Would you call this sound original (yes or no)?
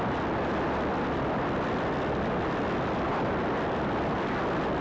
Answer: yes